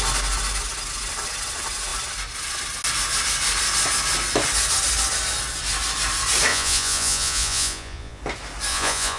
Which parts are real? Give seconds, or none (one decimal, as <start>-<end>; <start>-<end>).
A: 0.0-6.5; 8.2-8.7